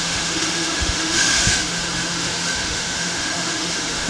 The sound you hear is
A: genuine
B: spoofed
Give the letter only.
B